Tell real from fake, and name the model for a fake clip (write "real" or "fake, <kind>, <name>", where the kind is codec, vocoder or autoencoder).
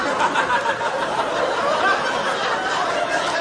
real